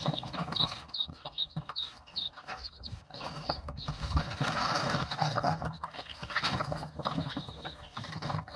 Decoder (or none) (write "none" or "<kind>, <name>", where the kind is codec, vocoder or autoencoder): codec, DAC